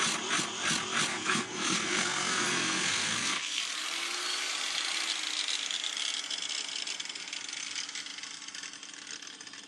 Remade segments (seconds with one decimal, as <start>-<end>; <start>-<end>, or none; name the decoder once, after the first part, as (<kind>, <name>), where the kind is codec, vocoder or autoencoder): 1.1-3.6 (codec, SNAC)